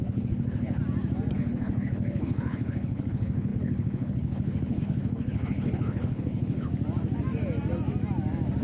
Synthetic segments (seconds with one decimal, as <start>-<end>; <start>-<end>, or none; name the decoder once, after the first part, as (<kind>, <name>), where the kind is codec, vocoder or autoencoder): 0.0-0.8 (codec, HILCodec); 1.3-6.7